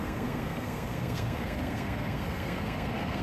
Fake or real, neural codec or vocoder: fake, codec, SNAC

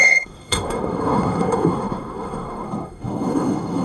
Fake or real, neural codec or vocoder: fake, codec, SNAC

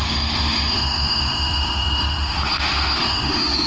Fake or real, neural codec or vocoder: fake, autoencoder, DAC-VAE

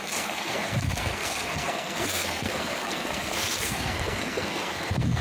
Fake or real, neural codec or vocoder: fake, codec, SNAC